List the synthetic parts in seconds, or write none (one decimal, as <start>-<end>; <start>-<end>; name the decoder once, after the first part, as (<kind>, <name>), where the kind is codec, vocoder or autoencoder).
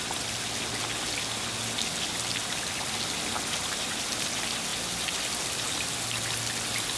none